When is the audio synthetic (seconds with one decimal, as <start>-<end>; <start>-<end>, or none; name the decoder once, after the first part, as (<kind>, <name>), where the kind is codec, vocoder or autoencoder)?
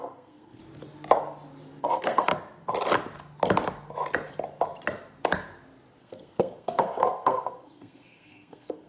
0.0-0.6 (codec, SNAC); 1.8-2.3; 6.0-8.9